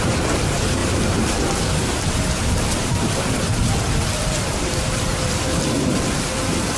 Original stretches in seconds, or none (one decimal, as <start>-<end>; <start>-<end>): none